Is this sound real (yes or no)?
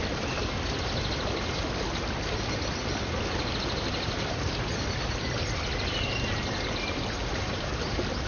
yes